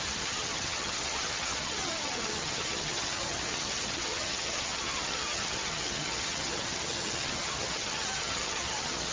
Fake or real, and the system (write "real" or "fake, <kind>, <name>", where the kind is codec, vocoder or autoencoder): fake, vocoder, HiFi-GAN